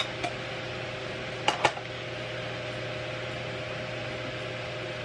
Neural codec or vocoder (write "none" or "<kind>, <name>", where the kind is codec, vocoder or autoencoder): none